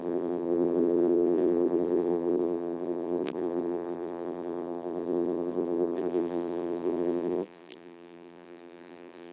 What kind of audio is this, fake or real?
fake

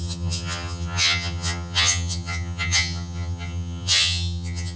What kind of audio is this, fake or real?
fake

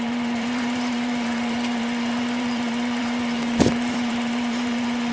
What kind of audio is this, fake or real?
fake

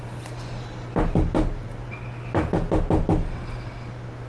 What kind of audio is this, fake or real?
real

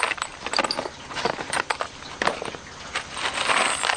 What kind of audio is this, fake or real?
real